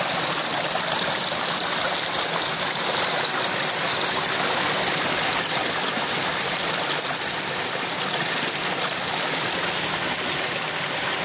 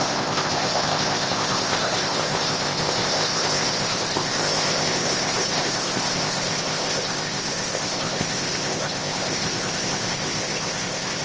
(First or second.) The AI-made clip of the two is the second